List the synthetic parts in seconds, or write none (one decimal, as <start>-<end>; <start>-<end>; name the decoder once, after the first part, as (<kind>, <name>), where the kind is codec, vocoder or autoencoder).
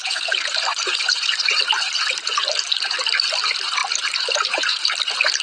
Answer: 0.0-2.1 (vocoder, BigVGAN v2); 3.8-4.8